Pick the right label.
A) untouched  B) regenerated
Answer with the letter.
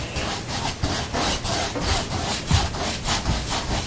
A